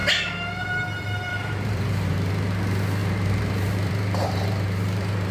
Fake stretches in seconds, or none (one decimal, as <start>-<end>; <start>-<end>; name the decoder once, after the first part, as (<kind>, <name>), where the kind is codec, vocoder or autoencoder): 1.3-2.3 (vocoder, BigVGAN v2); 3.0-5.3